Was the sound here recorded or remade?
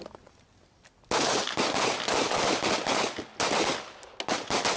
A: recorded